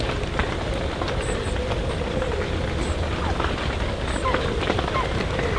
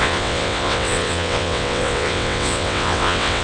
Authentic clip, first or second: first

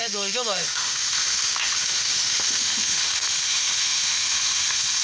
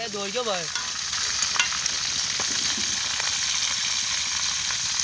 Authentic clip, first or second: second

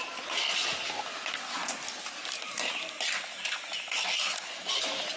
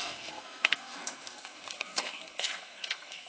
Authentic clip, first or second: first